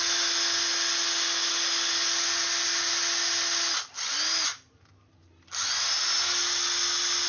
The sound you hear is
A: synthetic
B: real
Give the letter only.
B